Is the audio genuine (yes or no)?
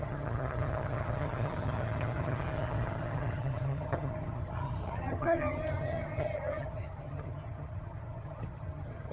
no